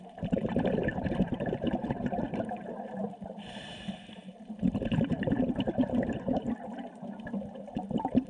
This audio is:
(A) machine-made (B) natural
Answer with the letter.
A